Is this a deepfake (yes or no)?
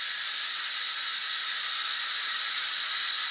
no